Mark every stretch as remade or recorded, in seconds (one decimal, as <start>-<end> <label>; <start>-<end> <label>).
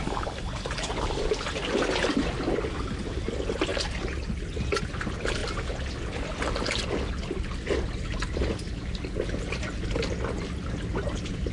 0.0-11.5 recorded